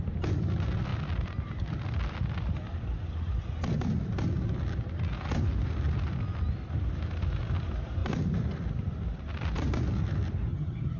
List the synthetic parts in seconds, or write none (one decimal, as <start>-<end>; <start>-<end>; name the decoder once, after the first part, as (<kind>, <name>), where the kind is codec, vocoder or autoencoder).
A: 10.5-11.0 (vocoder, HiFi-GAN)